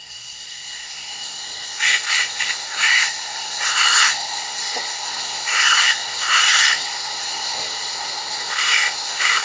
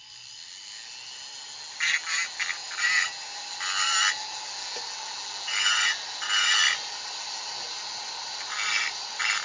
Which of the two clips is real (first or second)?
second